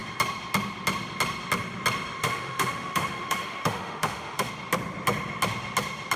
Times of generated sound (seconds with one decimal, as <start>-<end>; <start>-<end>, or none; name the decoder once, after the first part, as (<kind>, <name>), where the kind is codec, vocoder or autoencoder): 2.2-4.5 (autoencoder, DAC-VAE)